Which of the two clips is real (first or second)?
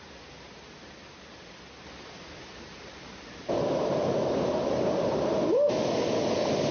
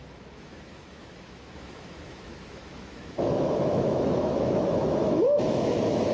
first